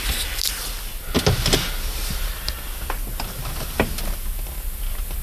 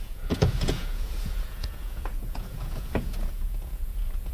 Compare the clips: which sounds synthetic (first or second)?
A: second